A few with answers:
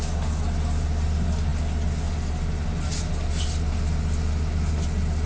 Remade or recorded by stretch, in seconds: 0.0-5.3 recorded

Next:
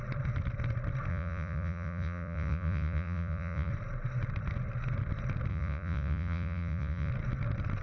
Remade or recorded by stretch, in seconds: 0.0-1.1 recorded; 1.1-3.7 remade; 3.7-5.5 recorded; 5.5-7.1 remade; 7.1-7.8 recorded

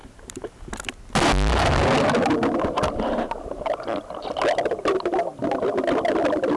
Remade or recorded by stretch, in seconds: 0.0-6.6 recorded

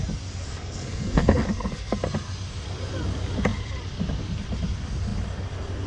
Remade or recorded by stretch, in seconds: 0.0-0.5 recorded; 0.5-2.0 remade; 2.0-5.9 recorded

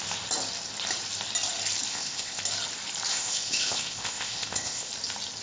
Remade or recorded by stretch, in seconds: 0.0-1.9 recorded; 1.9-2.4 remade; 2.4-3.1 recorded; 3.1-4.9 remade; 4.9-5.4 recorded